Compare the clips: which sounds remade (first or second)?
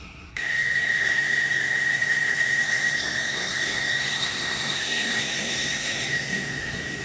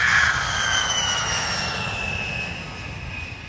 first